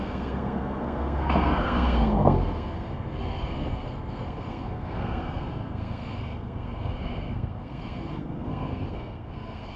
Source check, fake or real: fake